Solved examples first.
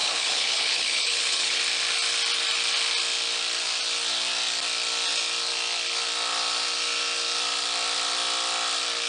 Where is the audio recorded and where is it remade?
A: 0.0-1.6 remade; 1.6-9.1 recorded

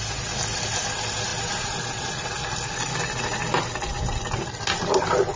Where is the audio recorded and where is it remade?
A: 0.0-5.4 recorded

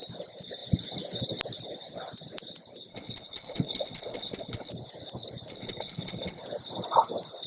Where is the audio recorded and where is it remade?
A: 0.0-2.9 recorded; 2.9-4.7 remade; 4.7-5.5 recorded; 5.5-6.4 remade; 6.4-7.5 recorded

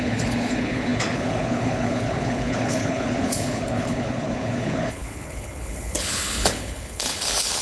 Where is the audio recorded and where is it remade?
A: 0.0-7.6 remade

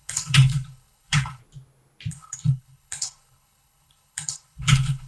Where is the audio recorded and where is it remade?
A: 0.0-1.4 remade; 1.4-2.1 recorded; 2.1-5.1 remade

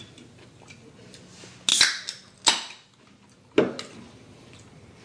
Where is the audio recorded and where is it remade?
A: 0.0-5.0 recorded

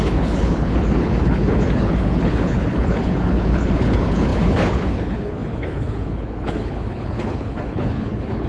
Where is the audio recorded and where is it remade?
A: 0.0-8.5 remade

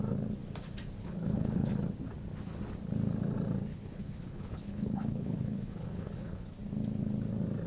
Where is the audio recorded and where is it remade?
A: 0.0-1.0 recorded; 1.0-1.7 remade; 1.7-3.7 recorded; 3.7-6.6 remade; 6.6-7.7 recorded